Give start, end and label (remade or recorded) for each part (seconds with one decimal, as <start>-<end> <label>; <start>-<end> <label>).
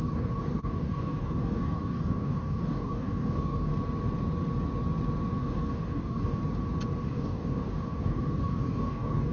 0.0-3.7 remade; 3.7-5.4 recorded; 5.4-6.4 remade; 6.4-7.0 recorded; 7.0-9.3 remade